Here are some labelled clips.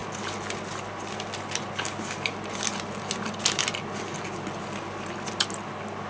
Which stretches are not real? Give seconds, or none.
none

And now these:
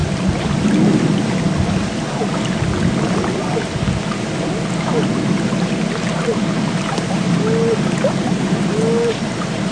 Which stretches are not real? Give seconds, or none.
none